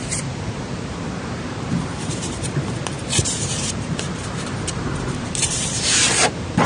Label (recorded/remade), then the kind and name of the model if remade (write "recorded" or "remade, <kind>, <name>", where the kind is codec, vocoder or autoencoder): remade, vocoder, BigVGAN v2